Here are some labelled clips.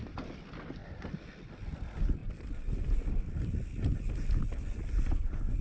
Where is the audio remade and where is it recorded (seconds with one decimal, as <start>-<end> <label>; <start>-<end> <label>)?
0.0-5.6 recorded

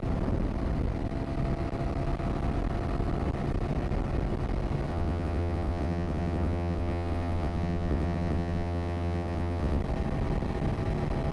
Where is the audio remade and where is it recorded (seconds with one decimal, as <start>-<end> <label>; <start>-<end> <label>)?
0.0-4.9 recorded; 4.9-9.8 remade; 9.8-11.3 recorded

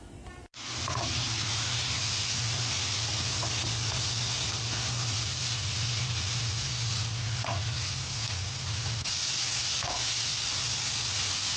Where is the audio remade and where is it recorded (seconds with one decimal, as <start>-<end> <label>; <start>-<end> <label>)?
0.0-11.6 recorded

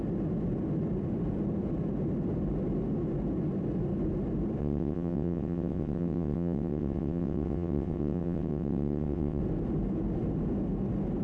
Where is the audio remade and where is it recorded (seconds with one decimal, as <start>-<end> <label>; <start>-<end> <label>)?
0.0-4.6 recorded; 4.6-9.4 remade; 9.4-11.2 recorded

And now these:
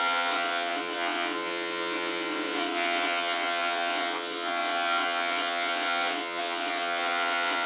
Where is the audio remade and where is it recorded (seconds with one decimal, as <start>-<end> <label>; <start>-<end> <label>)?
0.0-7.7 remade